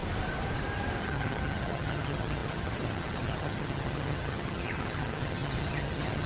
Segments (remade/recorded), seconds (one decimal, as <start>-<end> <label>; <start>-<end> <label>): 0.0-1.0 recorded; 1.0-6.3 remade